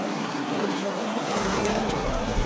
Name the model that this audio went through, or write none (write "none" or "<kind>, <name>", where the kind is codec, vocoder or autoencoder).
codec, SNAC